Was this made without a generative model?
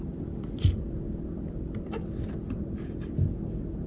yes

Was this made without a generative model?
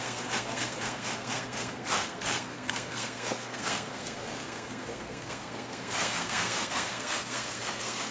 no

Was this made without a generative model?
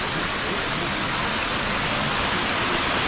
yes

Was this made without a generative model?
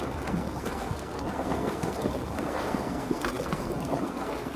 no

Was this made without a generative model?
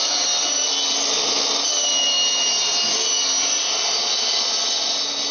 yes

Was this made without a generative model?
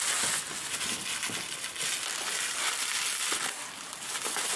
yes